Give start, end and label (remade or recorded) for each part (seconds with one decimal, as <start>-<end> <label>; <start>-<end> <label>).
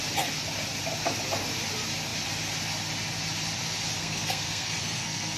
0.0-4.0 recorded; 4.0-5.4 remade